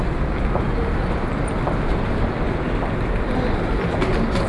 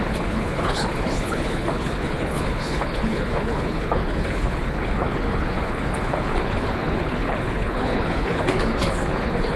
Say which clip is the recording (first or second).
first